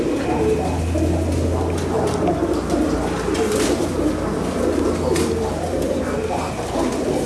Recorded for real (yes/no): yes